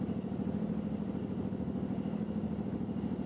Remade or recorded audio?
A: recorded